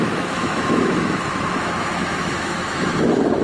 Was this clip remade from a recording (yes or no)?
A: yes